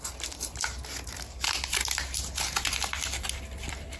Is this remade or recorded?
recorded